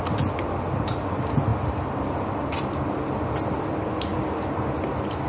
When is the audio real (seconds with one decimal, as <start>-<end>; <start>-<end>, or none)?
0.0-5.3